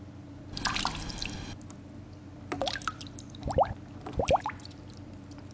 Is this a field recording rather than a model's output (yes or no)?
yes